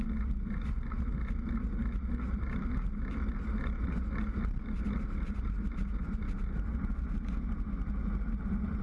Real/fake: real